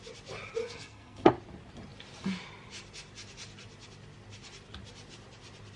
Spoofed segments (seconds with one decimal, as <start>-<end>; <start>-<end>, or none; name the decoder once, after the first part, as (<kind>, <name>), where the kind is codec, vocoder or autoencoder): 0.6-1.3 (codec, SNAC)